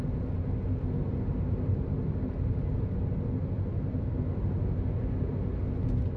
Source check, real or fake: real